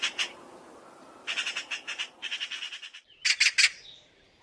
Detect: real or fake real